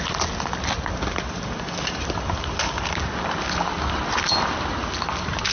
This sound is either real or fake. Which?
real